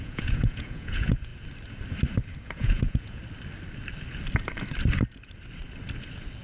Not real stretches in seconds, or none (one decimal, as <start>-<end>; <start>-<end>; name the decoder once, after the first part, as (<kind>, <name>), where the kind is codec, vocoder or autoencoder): 0.0-1.3 (vocoder, Vocos); 2.4-3.2